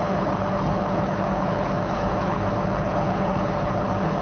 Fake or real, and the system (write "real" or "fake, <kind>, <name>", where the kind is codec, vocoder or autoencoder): fake, codec, HILCodec